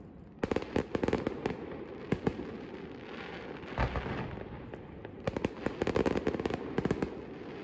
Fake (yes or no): no